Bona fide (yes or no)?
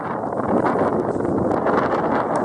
yes